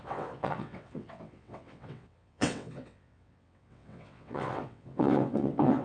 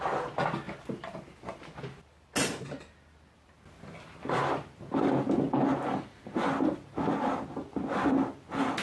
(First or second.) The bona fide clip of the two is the second